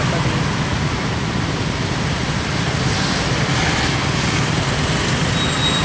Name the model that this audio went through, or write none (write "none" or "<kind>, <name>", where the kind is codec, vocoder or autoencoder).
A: none